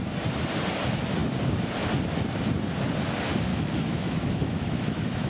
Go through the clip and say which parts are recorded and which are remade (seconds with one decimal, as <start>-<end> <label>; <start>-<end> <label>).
0.0-3.5 recorded; 3.5-5.3 remade